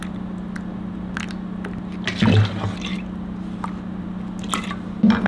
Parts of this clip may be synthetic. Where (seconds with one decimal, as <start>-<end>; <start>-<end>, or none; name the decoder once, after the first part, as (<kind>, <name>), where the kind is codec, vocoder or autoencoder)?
none